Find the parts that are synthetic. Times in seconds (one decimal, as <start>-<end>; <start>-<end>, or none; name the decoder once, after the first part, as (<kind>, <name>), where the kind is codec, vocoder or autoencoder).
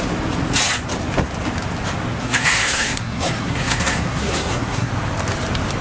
2.2-4.9 (codec, SNAC)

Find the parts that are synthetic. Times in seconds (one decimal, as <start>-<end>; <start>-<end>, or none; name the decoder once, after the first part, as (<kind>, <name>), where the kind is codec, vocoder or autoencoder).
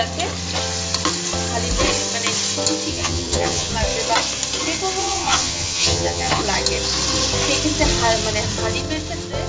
2.9-3.7 (vocoder, HiFi-GAN); 5.0-6.4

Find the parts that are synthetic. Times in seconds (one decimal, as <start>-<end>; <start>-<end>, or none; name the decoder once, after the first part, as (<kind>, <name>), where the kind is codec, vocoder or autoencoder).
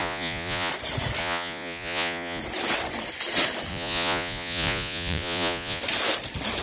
0.0-0.7 (vocoder, Vocos); 1.2-2.4; 3.7-5.8